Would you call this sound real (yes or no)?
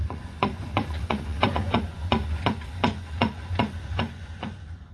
no